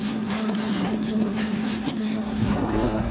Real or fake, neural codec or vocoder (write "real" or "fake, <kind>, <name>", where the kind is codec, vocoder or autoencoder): fake, codec, SNAC